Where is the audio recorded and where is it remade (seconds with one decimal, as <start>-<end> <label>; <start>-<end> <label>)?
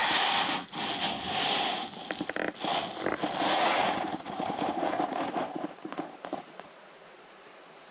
0.0-3.4 recorded; 3.4-7.9 remade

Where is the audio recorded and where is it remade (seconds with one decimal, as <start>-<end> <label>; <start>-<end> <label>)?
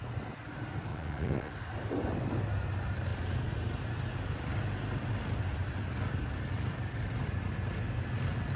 0.0-0.9 recorded; 0.9-1.5 remade; 1.5-8.6 recorded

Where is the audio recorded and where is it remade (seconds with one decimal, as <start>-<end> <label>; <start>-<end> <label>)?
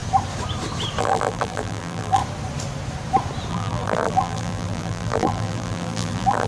0.0-1.0 recorded; 1.0-2.2 remade; 2.2-3.5 recorded; 3.5-6.5 remade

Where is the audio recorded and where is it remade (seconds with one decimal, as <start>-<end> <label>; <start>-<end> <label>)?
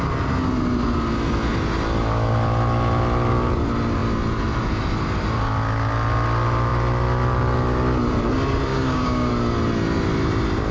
0.0-8.7 recorded; 8.7-9.3 remade; 9.3-10.7 recorded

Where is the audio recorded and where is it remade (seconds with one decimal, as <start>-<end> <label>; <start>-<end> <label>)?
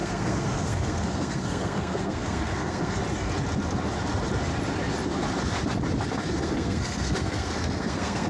0.0-3.0 remade; 3.0-6.4 recorded; 6.4-8.3 remade